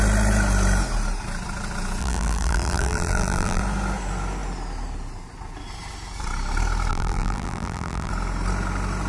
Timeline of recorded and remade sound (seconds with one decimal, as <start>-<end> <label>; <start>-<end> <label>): 0.0-2.0 recorded; 2.0-3.6 remade; 3.6-6.9 recorded; 6.9-8.1 remade; 8.1-9.1 recorded